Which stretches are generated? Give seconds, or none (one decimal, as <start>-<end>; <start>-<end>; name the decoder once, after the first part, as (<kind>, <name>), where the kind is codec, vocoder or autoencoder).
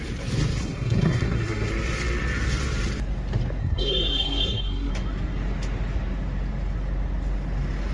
0.6-1.7 (codec, SNAC); 3.6-4.9